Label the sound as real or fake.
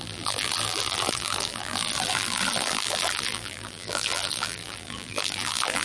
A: fake